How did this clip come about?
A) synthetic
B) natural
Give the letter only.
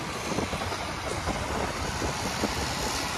B